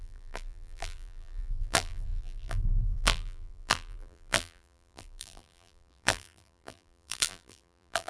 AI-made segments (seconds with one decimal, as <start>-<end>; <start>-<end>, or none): 0.0-8.1